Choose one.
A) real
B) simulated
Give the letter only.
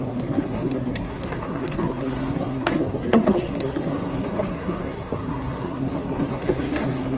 B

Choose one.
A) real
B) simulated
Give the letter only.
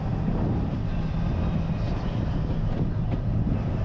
A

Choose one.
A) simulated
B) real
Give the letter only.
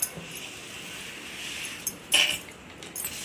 B